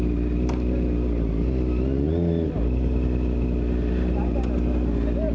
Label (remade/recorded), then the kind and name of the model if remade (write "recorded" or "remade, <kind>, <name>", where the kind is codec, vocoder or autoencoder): recorded